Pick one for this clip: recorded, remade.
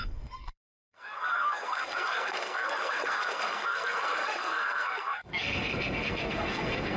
remade